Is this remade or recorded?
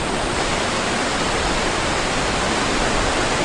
recorded